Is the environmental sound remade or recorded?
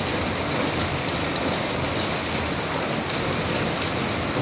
recorded